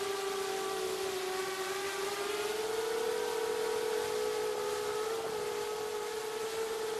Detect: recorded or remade recorded